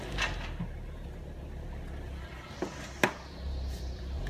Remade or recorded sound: recorded